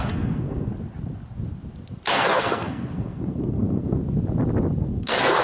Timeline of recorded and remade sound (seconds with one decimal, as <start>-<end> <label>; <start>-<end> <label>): 0.0-0.7 remade; 0.7-2.1 recorded; 2.1-4.0 remade; 4.0-4.8 recorded; 4.8-5.4 remade